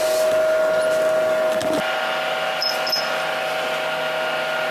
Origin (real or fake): real